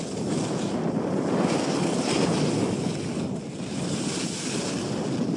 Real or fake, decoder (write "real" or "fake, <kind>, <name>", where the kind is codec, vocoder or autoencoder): real